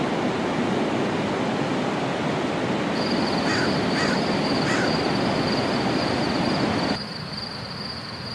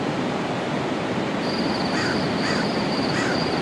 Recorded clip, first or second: first